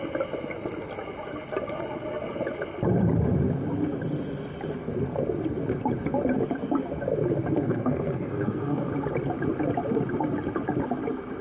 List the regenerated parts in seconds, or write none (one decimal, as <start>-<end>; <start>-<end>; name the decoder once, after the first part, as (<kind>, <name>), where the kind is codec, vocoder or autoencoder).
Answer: 7.6-8.9 (codec, SNAC)